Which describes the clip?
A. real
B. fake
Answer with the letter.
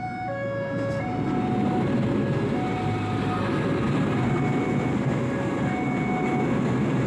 A